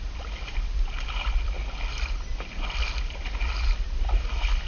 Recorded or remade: recorded